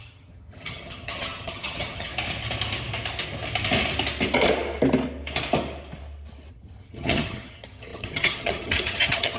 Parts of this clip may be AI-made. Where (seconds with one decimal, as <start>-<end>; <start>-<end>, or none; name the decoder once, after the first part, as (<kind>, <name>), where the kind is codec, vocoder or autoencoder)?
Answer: 0.0-2.1 (vocoder, HiFi-GAN); 6.5-9.4